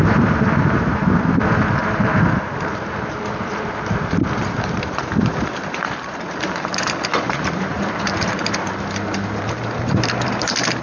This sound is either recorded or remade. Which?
remade